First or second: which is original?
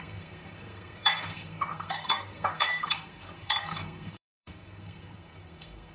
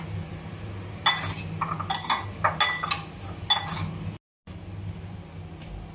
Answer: second